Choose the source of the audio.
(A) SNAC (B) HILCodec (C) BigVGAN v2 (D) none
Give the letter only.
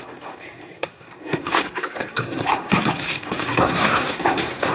A